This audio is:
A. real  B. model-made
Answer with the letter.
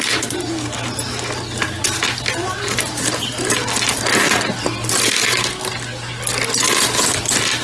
A